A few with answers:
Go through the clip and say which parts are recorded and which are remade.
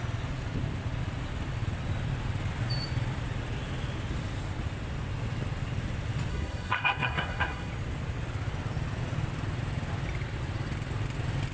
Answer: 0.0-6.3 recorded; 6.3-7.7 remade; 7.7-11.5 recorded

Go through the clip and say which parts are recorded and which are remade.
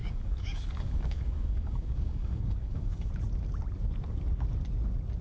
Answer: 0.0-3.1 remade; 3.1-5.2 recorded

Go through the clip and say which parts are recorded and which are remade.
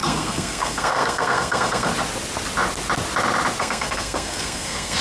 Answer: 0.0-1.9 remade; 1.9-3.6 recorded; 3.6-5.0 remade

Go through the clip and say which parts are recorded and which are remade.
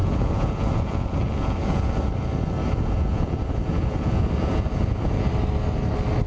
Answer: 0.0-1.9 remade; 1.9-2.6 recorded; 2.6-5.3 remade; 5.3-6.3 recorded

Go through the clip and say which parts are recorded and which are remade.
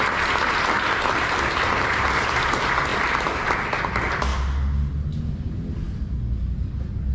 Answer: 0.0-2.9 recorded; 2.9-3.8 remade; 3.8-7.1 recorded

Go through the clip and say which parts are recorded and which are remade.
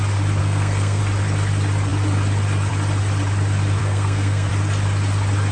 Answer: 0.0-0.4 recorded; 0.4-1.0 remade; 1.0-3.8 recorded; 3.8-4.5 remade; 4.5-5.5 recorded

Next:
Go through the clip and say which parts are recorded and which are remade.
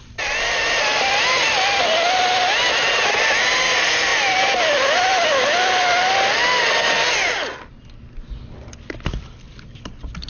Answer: 0.0-10.3 recorded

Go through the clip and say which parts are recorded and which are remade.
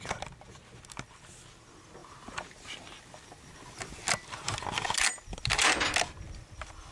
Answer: 0.0-2.0 recorded; 2.0-2.7 remade; 2.7-6.9 recorded